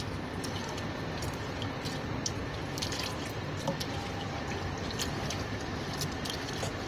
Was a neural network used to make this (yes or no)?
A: no